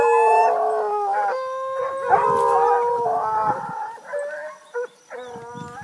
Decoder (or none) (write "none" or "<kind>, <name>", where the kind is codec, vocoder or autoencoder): none